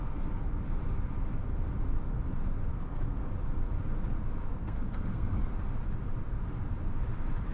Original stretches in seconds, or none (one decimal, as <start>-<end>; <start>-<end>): 0.0-2.7; 3.3-4.5; 5.5-7.5